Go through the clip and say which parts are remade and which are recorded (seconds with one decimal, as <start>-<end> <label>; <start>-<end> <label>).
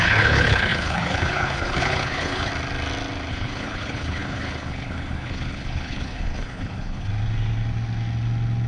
0.0-2.5 remade; 2.5-3.3 recorded; 3.3-7.1 remade; 7.1-8.7 recorded